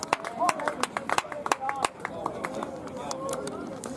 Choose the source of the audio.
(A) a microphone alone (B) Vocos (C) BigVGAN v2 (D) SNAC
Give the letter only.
C